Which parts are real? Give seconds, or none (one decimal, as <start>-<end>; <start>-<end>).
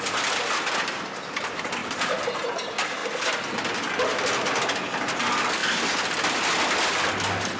0.0-1.8; 2.6-7.6